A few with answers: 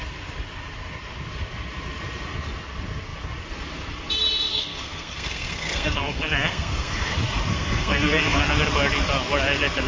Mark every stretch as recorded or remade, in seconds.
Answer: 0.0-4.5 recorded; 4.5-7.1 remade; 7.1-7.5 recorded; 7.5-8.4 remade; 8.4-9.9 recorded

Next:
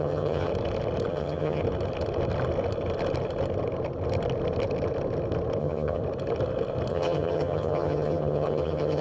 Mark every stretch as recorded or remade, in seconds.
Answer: 0.0-0.5 remade; 0.5-1.1 recorded; 1.1-1.6 remade; 1.6-5.6 recorded; 5.6-6.0 remade; 6.0-6.9 recorded; 6.9-9.0 remade

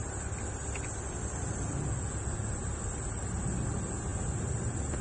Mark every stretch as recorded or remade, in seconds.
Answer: 0.0-5.0 recorded

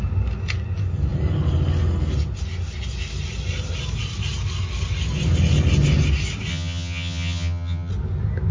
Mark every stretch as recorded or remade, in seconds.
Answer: 0.0-6.5 recorded; 6.5-7.9 remade; 7.9-8.5 recorded

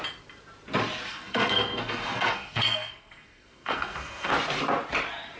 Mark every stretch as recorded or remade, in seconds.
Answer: 0.0-1.1 recorded; 1.1-4.3 remade; 4.3-5.4 recorded

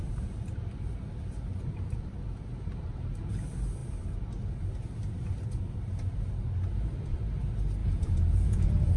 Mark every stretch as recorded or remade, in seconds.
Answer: 0.0-7.8 recorded; 7.8-9.0 remade

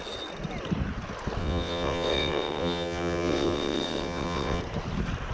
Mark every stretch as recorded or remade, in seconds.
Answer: 0.0-1.4 recorded; 1.4-4.6 remade; 4.6-5.3 recorded

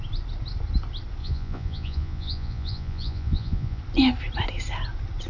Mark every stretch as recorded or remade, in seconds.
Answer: 0.0-1.2 recorded; 1.2-3.8 remade; 3.8-5.3 recorded